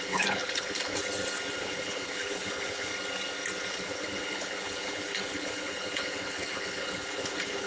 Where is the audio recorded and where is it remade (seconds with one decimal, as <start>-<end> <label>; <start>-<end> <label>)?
0.0-1.0 remade; 1.0-1.5 recorded; 1.5-2.9 remade; 2.9-3.7 recorded; 3.7-7.7 remade